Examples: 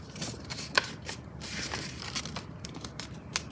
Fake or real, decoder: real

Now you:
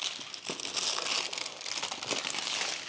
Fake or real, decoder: real